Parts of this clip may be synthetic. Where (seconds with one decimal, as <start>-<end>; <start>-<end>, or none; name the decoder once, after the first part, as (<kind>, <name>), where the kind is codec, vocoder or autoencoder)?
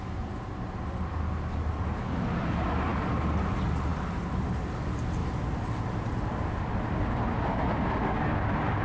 none